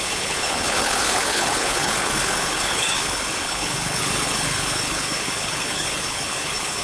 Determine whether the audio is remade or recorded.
remade